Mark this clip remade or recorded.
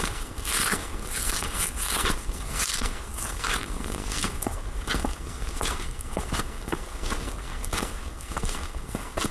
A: remade